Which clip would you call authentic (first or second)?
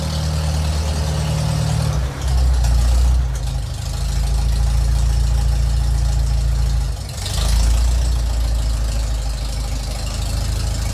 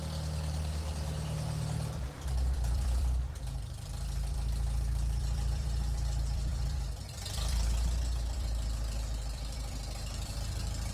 first